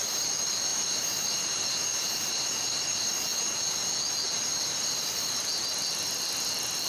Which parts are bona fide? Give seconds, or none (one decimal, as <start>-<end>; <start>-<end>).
0.0-0.7; 2.9-4.5; 5.3-6.9